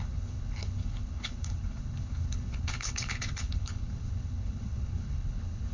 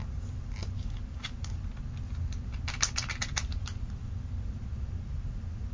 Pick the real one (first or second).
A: second